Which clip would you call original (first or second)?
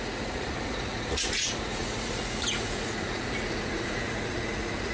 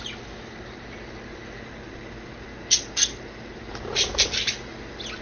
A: second